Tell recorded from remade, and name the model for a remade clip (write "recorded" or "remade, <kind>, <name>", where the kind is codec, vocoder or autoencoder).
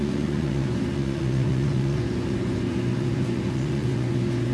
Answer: remade, vocoder, Vocos